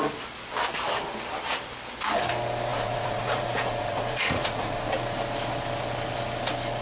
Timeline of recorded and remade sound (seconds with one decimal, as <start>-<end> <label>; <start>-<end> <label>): 0.0-2.7 recorded; 2.7-4.9 remade; 4.9-6.8 recorded